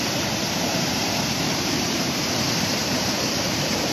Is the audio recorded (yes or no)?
no